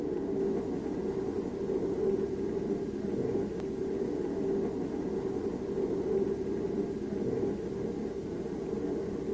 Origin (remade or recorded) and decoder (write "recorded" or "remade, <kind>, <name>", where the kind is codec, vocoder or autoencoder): recorded